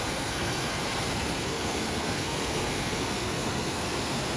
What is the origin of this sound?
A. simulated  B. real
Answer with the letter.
A